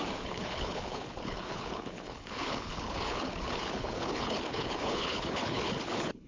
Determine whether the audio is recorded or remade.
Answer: remade